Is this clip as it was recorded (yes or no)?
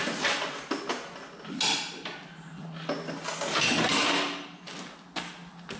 yes